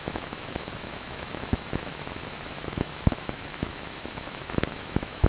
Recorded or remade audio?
remade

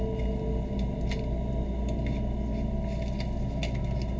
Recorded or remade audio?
recorded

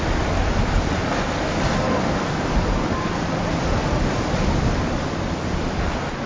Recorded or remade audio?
recorded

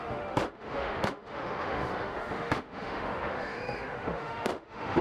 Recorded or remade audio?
remade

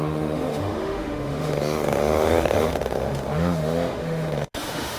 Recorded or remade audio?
remade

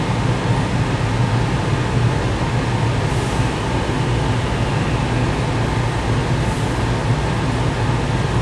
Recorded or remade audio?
recorded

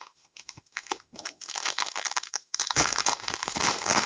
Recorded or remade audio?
remade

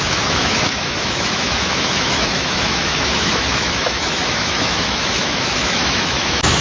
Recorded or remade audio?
remade